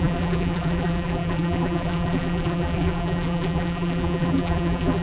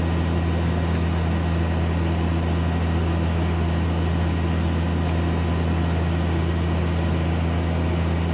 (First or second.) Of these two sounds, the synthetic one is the first